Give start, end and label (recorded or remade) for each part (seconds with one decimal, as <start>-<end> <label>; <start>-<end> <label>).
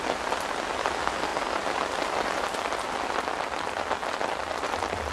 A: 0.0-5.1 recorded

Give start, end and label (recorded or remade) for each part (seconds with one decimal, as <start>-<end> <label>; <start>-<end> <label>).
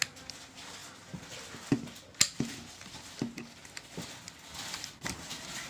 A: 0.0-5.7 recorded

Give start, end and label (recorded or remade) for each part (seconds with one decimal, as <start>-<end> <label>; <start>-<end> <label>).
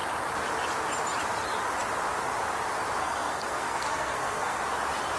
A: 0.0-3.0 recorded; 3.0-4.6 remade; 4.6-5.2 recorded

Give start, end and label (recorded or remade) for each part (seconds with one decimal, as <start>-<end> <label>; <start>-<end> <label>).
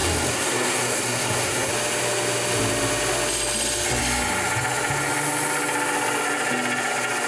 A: 0.0-1.7 remade; 1.7-7.3 recorded